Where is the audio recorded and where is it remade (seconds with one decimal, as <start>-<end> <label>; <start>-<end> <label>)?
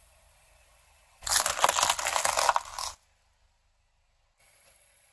0.0-1.3 remade; 1.3-4.4 recorded; 4.4-5.1 remade